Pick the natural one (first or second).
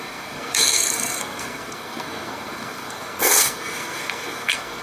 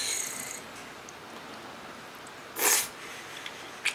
second